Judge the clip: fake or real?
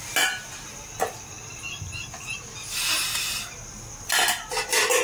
real